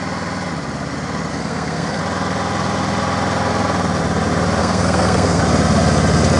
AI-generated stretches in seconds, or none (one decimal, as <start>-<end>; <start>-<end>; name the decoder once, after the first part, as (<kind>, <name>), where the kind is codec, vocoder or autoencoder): 1.3-2.0 (codec, SNAC); 4.6-5.4